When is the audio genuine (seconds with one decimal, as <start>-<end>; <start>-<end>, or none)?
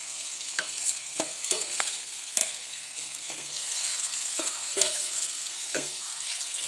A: none